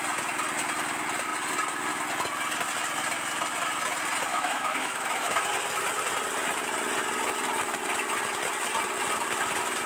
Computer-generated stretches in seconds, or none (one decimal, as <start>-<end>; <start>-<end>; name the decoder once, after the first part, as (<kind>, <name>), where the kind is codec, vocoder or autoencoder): 4.3-5.4 (autoencoder, DAC-VAE)